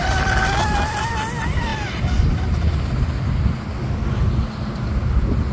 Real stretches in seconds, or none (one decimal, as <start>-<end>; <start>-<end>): 0.0-5.5